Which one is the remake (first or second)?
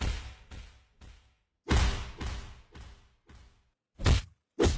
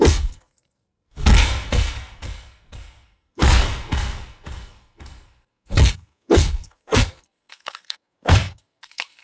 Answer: second